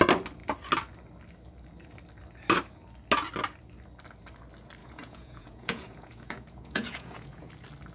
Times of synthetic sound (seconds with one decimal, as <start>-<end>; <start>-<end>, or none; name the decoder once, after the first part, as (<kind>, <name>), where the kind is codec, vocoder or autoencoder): 4.8-7.5 (vocoder, Vocos)